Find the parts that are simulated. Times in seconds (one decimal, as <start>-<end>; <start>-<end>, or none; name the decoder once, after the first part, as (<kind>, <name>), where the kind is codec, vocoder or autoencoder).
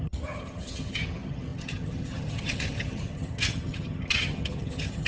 0.0-5.1 (vocoder, HiFi-GAN)